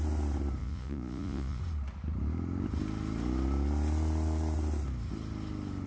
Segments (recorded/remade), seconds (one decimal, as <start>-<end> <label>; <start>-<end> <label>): 0.0-0.6 recorded; 0.6-1.6 remade; 1.6-5.9 recorded